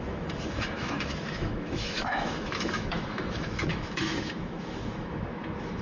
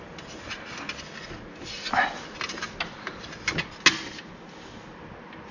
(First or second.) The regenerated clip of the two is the first